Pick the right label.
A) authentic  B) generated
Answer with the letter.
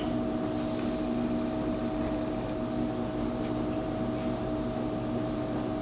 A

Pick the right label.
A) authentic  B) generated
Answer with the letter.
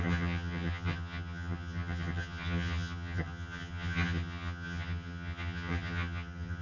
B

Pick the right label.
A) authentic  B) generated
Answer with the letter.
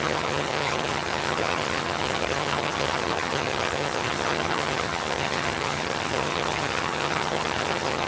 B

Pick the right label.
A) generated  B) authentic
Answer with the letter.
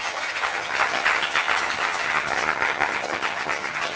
A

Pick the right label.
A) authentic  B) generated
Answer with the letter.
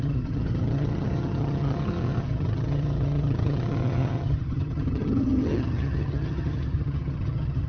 B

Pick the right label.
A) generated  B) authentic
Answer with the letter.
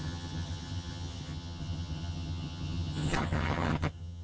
A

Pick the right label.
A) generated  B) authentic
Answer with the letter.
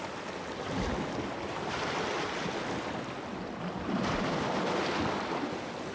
B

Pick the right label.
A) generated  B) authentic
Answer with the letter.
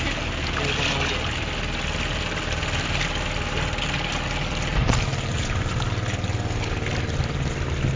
B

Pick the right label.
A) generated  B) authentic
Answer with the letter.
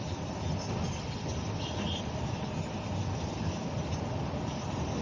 B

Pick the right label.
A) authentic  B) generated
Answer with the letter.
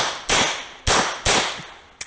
A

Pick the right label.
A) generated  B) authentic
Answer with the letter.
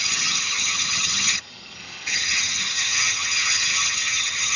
A